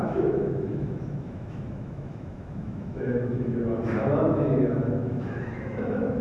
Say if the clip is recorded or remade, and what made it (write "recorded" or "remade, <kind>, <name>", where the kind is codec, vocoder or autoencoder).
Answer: remade, autoencoder, DAC-VAE